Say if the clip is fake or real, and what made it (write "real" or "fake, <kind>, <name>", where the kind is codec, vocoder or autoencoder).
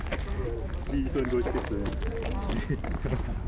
real